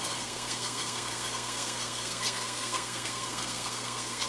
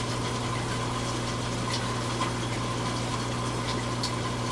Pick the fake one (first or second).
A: first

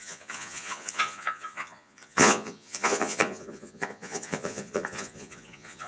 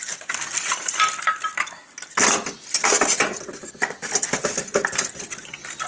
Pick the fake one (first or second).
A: first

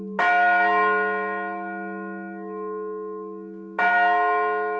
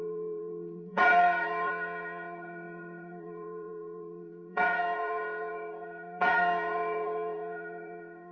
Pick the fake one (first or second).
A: second